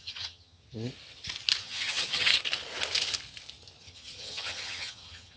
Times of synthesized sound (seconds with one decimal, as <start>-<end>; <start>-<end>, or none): 0.0-0.6; 1.6-2.3; 3.8-5.4